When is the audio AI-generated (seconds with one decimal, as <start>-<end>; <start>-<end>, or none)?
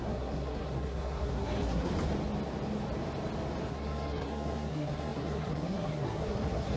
0.0-1.9; 3.7-6.8